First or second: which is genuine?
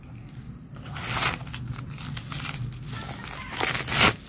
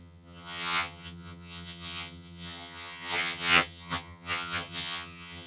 first